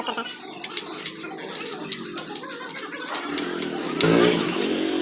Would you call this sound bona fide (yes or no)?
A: yes